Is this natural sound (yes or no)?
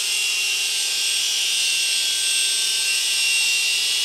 yes